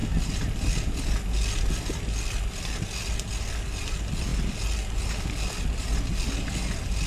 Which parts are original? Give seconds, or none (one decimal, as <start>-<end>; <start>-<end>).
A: 0.0-7.1

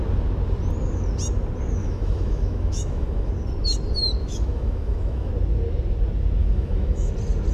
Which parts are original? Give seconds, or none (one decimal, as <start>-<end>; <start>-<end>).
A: 0.0-1.8; 3.3-4.2; 5.3-6.4; 7.1-7.5

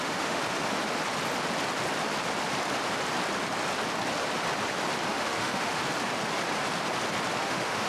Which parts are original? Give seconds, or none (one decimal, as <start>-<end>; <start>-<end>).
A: 0.4-5.1; 5.8-7.4

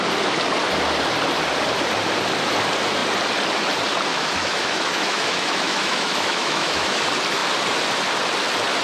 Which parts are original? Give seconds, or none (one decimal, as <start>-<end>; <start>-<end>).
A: 0.0-4.1; 7.0-8.8

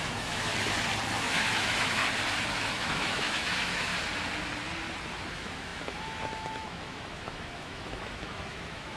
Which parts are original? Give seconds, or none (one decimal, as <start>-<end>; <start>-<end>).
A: 0.5-1.2; 2.0-2.6; 3.9-5.3

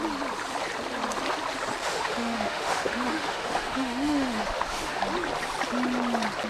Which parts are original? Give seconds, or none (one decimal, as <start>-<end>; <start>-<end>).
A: 0.0-1.8; 5.0-6.5

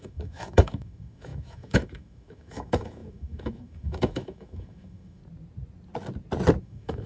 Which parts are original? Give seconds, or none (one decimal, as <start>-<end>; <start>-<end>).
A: 5.2-6.6

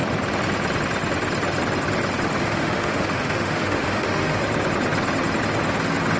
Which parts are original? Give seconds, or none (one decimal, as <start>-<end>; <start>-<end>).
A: 0.0-2.4; 4.4-6.2